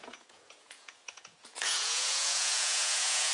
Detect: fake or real fake